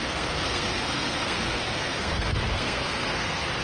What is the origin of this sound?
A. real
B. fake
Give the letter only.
B